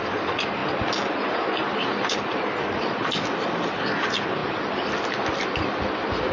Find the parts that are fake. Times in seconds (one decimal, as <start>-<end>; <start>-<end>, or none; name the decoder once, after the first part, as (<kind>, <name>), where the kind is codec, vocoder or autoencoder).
none